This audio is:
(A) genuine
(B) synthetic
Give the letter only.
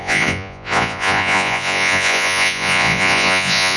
B